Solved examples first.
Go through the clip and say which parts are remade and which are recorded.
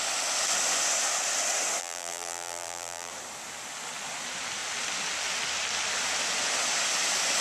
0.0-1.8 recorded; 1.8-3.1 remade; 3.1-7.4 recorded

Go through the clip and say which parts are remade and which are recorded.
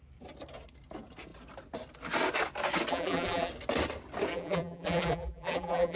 0.0-2.9 recorded; 2.9-3.5 remade; 3.5-4.3 recorded; 4.3-6.0 remade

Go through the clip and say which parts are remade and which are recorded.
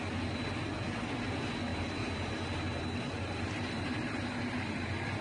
0.0-1.7 recorded; 1.7-4.8 remade; 4.8-5.2 recorded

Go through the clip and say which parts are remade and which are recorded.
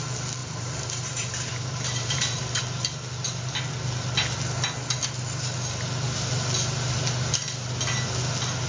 0.0-0.4 recorded; 0.4-2.6 remade; 2.6-8.7 recorded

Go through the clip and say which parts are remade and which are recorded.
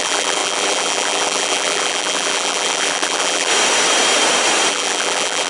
0.0-3.5 remade; 3.5-4.7 recorded; 4.7-5.5 remade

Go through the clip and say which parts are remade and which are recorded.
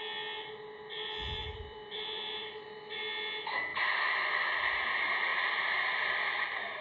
0.0-1.4 recorded; 1.4-2.9 remade; 2.9-3.7 recorded; 3.7-4.6 remade; 4.6-5.3 recorded; 5.3-6.8 remade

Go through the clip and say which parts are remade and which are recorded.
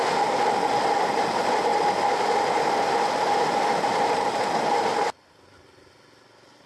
0.0-6.7 recorded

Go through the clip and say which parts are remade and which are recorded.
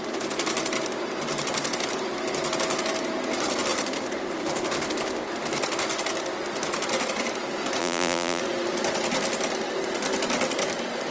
0.0-7.8 recorded; 7.8-8.4 remade; 8.4-11.1 recorded